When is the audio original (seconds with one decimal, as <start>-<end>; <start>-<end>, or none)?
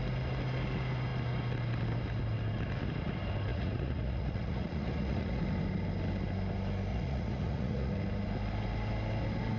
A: 0.0-3.5; 5.4-6.9; 7.9-9.6